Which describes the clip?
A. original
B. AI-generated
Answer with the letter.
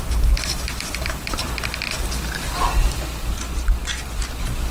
A